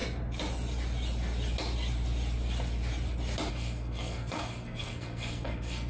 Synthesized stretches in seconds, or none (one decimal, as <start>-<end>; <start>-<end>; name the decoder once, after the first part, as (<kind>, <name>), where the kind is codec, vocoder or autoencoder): 3.5-5.9 (codec, SNAC)